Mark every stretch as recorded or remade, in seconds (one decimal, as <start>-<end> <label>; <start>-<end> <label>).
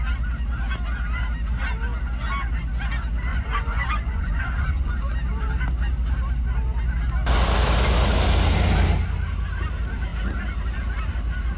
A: 0.0-3.3 recorded; 3.3-5.0 remade; 5.0-11.6 recorded